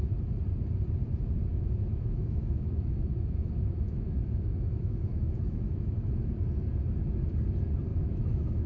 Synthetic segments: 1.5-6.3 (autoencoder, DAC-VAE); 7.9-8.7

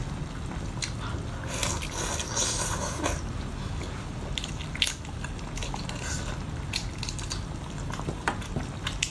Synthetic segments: none

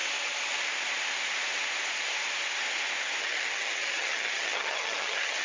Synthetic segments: 3.2-5.4 (vocoder, HiFi-GAN)